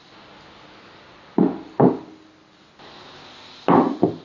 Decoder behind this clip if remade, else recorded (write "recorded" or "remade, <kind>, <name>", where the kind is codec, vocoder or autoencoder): recorded